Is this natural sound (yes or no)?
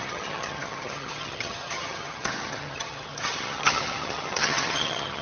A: no